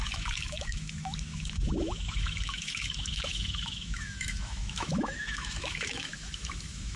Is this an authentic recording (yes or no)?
no